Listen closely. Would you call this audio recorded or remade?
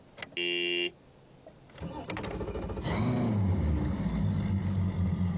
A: recorded